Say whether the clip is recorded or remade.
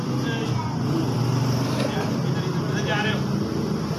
recorded